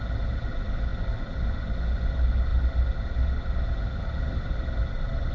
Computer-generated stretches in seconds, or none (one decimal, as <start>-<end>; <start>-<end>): none